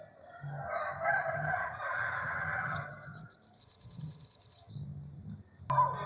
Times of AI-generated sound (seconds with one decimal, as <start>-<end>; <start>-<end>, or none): 1.3-2.8; 3.6-4.7